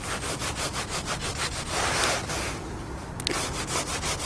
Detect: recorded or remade recorded